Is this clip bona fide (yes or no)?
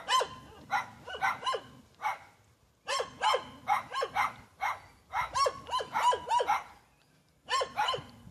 yes